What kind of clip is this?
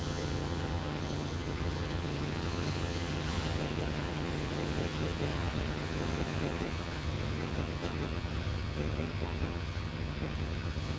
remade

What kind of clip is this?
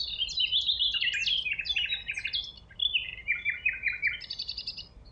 recorded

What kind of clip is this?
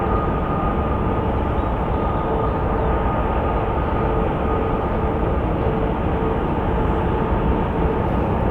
recorded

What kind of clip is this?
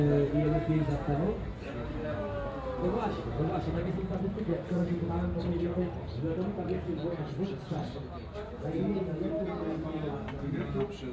recorded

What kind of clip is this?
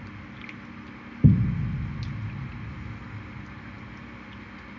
recorded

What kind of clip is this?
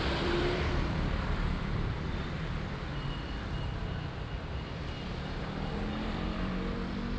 remade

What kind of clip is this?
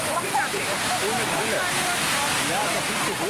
recorded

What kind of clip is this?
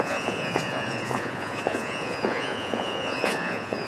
remade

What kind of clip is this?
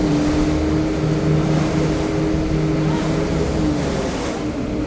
recorded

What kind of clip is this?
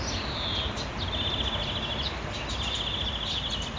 recorded